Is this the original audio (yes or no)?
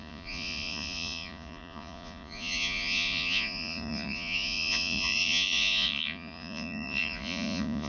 no